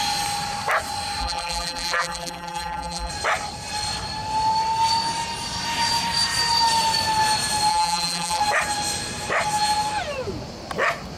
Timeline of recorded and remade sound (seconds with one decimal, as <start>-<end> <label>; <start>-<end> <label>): 0.0-1.2 recorded; 1.2-3.1 remade; 3.1-7.7 recorded; 7.7-8.4 remade; 8.4-11.2 recorded